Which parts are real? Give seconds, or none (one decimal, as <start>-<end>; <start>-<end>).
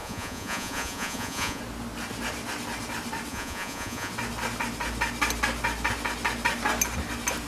1.6-3.3; 4.1-7.5